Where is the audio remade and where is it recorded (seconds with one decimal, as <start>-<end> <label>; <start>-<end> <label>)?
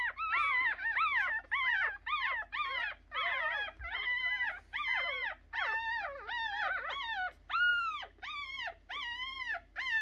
0.0-10.0 recorded